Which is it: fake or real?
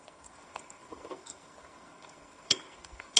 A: fake